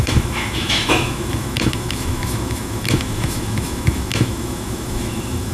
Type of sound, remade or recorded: remade